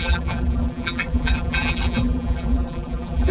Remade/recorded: remade